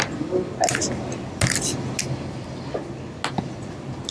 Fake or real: real